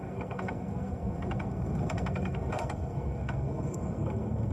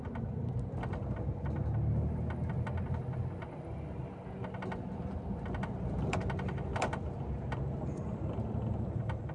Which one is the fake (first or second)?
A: first